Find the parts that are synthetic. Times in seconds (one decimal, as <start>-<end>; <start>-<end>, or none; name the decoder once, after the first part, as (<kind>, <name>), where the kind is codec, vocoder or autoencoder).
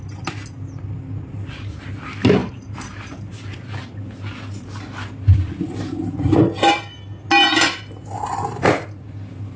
none